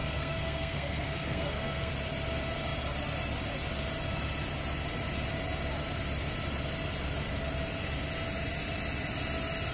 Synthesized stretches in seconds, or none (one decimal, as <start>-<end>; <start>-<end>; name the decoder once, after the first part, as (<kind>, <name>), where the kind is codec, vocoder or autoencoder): 0.0-1.9 (codec, SNAC)